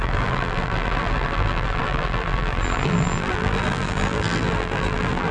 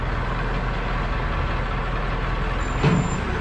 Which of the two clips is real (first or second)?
second